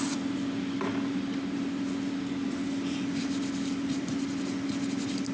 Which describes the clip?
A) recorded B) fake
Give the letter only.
A